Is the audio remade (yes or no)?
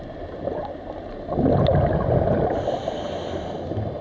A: no